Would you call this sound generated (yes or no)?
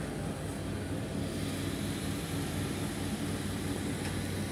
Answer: no